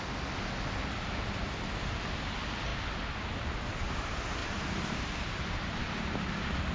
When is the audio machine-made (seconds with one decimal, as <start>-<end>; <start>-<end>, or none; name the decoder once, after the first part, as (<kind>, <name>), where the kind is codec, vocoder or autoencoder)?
4.4-6.7 (vocoder, BigVGAN v2)